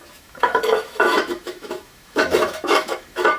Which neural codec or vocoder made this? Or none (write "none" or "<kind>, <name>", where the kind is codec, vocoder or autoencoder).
autoencoder, DAC-VAE